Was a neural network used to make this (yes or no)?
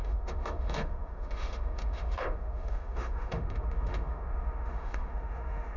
yes